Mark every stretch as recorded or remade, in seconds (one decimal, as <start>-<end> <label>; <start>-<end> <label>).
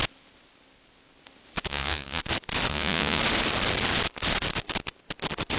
0.0-1.7 recorded; 1.7-2.2 remade; 2.2-2.7 recorded; 2.7-3.2 remade; 3.2-5.6 recorded